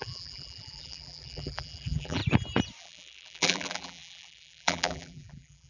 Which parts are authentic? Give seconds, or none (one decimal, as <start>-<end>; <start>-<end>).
2.2-2.8